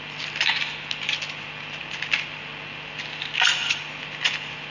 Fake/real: real